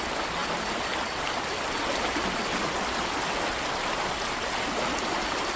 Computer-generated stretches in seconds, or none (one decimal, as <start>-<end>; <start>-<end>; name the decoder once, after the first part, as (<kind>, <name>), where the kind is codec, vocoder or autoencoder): none